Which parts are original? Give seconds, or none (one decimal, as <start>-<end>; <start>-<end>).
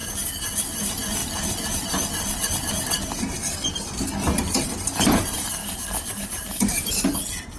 0.0-0.6; 1.2-2.7